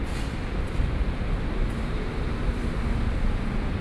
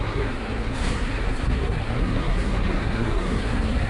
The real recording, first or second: first